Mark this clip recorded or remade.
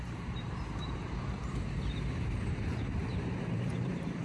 remade